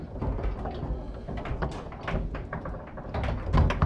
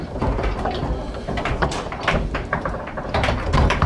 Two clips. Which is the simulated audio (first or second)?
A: second